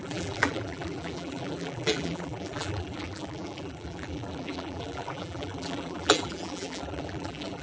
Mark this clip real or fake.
fake